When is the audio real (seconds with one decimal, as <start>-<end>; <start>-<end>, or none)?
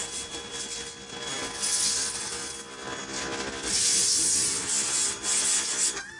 0.0-6.2